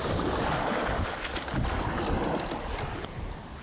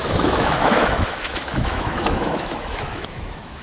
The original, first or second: first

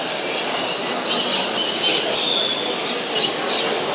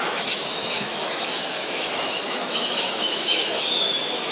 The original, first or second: first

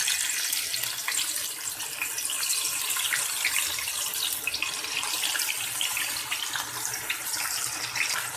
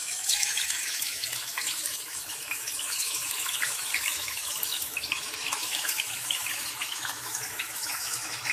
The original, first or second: first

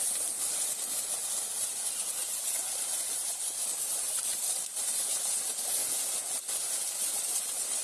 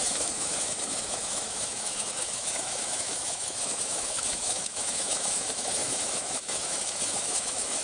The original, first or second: first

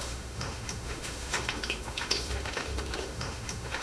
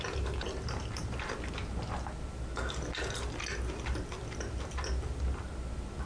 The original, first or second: second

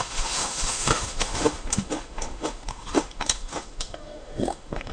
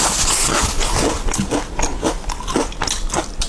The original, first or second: second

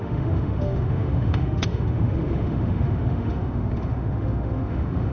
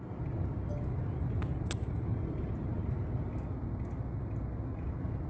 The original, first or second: second